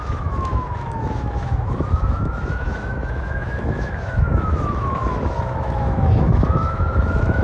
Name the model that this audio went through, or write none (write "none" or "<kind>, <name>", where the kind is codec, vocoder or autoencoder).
autoencoder, DAC-VAE